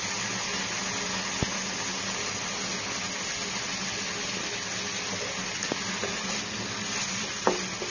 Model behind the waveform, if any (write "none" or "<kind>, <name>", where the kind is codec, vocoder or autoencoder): none